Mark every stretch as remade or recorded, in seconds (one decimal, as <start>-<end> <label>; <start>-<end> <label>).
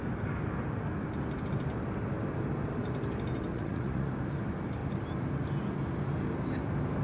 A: 0.0-3.5 recorded; 3.5-4.1 remade; 4.1-7.0 recorded